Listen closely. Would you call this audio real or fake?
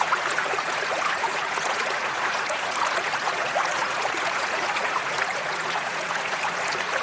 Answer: fake